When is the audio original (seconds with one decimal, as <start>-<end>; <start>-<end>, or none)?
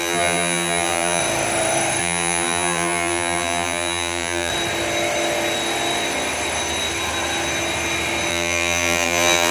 1.2-2.0; 4.5-8.3